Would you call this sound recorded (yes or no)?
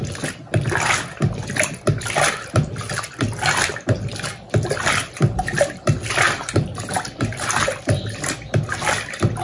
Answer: yes